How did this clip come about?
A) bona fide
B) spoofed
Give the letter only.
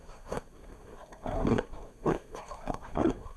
B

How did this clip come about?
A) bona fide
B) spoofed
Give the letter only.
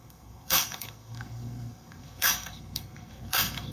B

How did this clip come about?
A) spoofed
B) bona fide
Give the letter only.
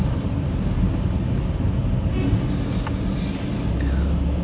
B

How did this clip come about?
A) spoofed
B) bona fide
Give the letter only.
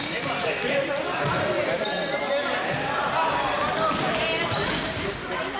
B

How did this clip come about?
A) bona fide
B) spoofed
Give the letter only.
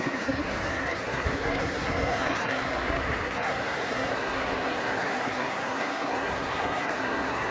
B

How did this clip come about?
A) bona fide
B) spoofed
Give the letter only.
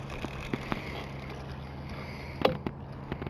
A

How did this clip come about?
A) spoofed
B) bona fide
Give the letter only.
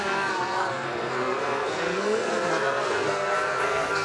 A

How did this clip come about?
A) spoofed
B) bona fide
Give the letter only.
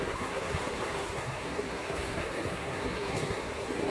A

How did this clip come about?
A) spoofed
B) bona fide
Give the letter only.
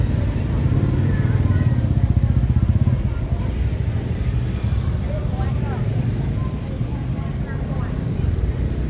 B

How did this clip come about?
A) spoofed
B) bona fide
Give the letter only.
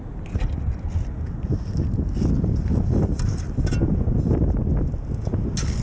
B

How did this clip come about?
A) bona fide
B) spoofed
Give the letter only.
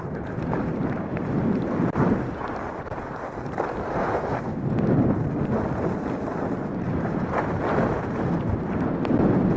A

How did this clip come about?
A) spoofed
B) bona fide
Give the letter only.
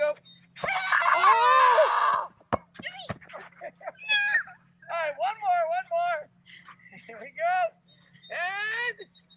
B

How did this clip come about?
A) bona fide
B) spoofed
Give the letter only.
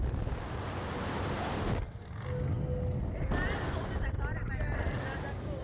A